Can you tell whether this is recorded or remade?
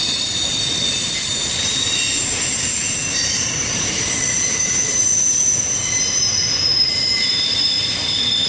remade